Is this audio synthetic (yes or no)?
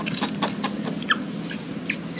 no